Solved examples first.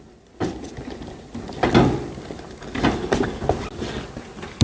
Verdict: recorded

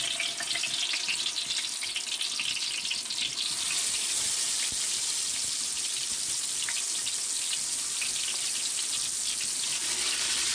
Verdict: recorded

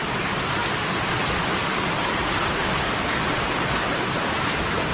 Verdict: recorded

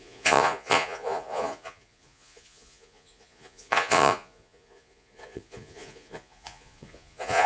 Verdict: remade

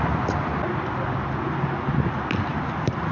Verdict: recorded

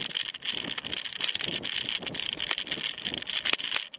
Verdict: recorded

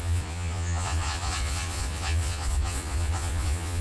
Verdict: remade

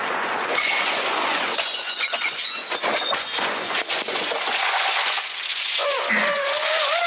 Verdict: remade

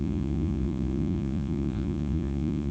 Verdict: remade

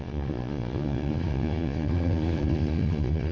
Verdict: remade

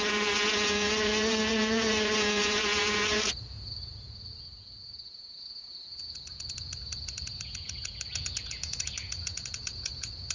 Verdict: remade